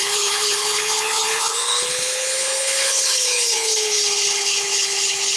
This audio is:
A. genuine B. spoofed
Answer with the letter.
B